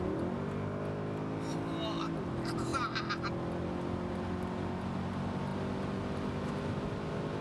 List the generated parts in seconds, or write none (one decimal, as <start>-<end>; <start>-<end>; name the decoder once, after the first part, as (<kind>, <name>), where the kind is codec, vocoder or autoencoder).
none